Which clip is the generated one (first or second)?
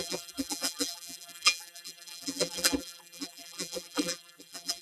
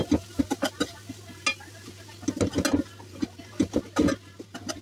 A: first